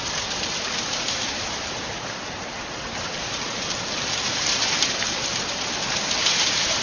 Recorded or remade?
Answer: remade